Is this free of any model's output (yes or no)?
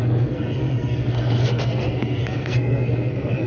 no